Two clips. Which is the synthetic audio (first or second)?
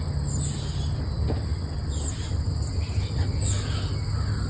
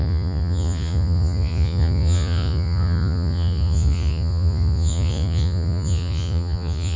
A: second